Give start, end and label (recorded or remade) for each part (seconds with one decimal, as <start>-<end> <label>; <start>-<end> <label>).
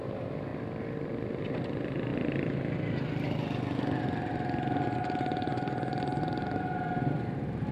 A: 0.0-0.5 remade; 0.5-1.1 recorded; 1.1-2.1 remade; 2.1-6.2 recorded; 6.2-7.7 remade